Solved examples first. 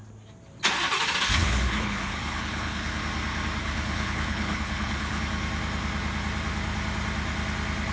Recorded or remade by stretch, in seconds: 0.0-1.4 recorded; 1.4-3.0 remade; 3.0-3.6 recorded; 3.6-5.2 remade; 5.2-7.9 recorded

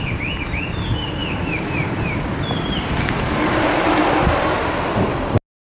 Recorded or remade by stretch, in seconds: 0.0-1.2 recorded; 1.2-4.2 remade; 4.2-5.7 recorded

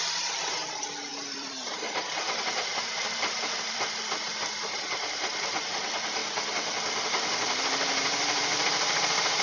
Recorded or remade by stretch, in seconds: 0.0-6.2 remade; 6.2-7.6 recorded; 7.6-9.4 remade

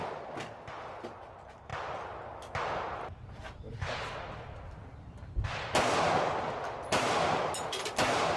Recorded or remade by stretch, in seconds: 0.0-8.4 recorded

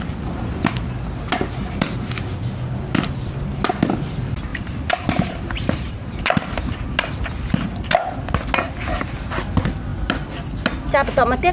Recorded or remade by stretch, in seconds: 0.0-1.6 recorded; 1.6-2.3 remade; 2.3-4.5 recorded; 4.5-6.2 remade; 6.2-11.5 recorded